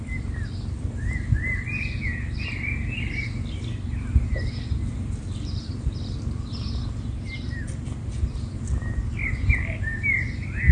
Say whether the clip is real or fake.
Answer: real